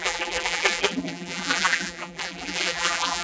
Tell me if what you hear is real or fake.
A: fake